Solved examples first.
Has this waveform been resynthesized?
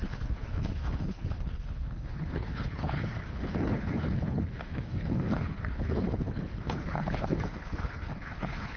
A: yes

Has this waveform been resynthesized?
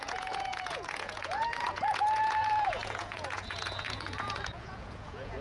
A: yes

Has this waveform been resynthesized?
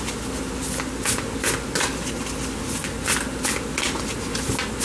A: no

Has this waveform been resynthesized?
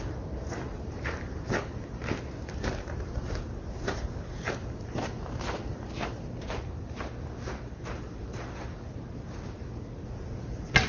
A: no